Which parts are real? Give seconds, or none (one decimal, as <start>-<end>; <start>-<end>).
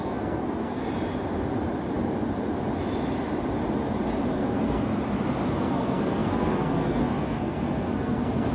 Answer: 0.8-4.3; 4.9-5.6